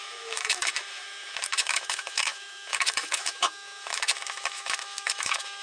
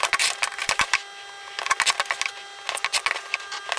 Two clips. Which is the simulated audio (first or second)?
first